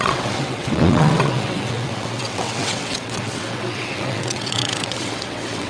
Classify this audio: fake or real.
fake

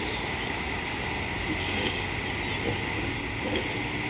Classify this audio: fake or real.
real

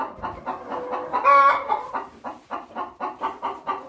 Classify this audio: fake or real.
real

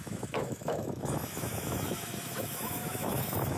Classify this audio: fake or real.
fake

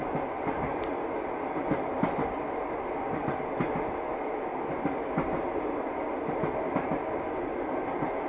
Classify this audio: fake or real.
real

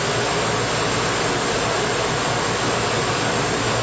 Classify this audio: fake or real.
real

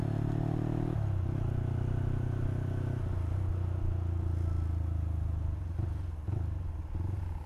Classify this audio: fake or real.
real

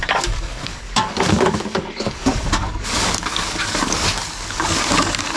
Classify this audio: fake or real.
fake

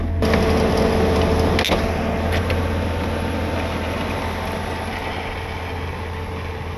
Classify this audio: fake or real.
real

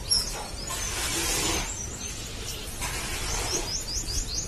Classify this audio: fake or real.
real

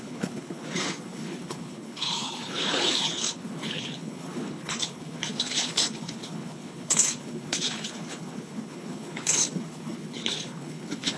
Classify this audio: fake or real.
fake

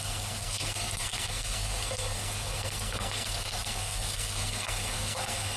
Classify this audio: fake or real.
fake